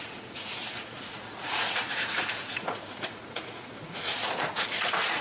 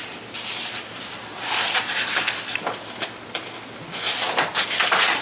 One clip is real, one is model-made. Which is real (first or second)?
second